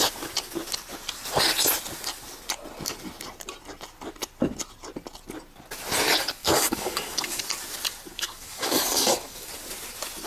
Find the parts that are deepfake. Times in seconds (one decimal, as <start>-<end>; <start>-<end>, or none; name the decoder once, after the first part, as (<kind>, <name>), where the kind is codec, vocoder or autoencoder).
6.4-7.4 (codec, DAC); 8.1-9.5